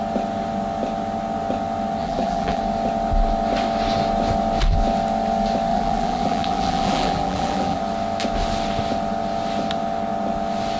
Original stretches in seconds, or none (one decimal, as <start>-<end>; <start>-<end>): 0.0-2.0; 2.6-5.7; 7.8-10.8